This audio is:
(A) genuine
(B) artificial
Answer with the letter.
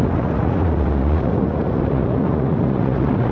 B